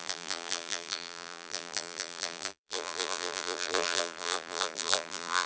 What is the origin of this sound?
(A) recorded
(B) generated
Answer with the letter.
B